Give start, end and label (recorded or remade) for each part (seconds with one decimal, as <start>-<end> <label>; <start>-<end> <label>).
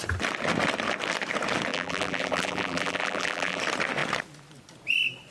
0.0-1.7 recorded; 1.7-3.6 remade; 3.6-5.3 recorded